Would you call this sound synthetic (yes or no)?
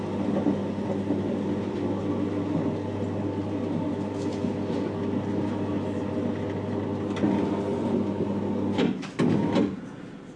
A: no